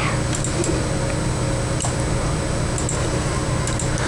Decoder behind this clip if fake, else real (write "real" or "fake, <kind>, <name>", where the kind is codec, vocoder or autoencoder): real